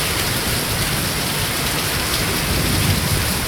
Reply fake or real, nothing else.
real